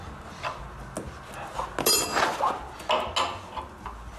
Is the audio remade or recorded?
recorded